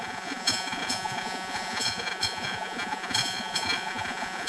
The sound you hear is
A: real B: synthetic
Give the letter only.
B